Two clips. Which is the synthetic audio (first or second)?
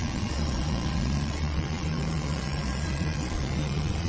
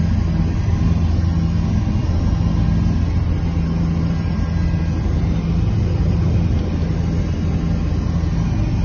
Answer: first